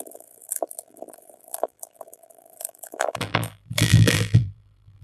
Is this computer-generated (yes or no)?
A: yes